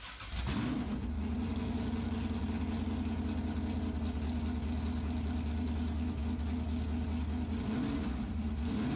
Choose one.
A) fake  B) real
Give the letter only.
B